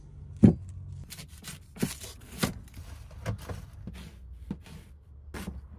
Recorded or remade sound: recorded